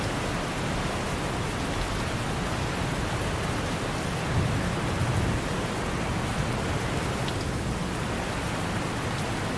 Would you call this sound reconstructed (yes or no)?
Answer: no